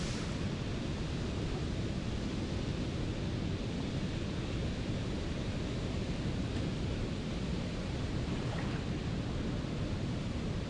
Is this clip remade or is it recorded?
recorded